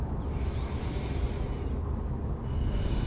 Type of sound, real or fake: real